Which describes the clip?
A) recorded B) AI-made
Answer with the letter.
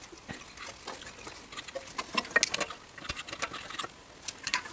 A